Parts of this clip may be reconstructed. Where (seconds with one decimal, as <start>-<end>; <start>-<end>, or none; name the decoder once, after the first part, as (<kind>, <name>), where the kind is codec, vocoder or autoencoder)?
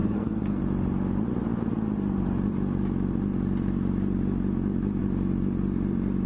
0.0-0.6 (codec, SNAC)